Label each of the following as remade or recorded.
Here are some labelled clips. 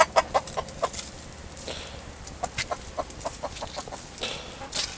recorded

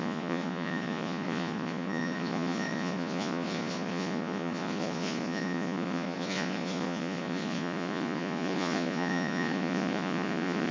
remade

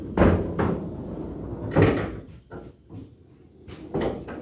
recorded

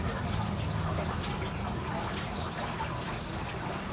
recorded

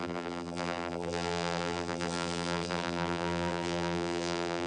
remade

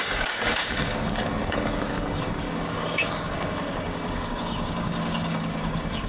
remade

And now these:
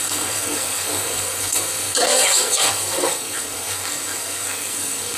remade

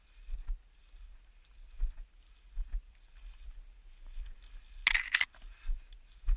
recorded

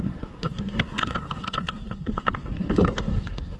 remade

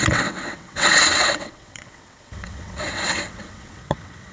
remade